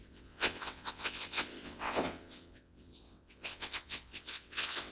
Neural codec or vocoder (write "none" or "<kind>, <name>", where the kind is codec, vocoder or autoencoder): vocoder, WaveNeXt